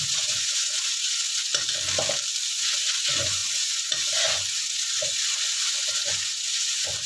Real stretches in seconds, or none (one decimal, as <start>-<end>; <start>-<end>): 1.5-2.5